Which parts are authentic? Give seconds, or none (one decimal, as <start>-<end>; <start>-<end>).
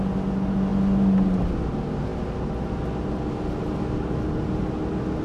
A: 0.0-5.2